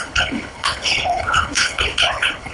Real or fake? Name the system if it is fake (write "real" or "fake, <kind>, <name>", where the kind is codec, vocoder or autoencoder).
fake, codec, HILCodec